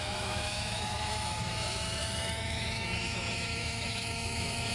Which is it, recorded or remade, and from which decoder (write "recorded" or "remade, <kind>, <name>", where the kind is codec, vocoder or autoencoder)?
remade, autoencoder, DAC-VAE